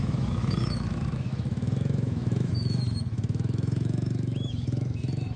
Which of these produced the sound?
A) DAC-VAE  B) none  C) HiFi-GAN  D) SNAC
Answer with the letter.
A